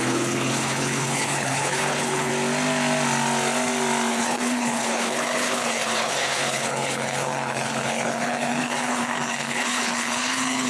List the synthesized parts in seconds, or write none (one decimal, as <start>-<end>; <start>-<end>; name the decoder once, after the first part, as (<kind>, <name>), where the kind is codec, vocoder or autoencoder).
0.0-2.3 (codec, HILCodec); 4.1-10.7